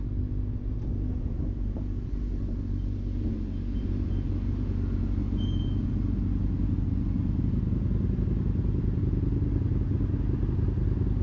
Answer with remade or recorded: recorded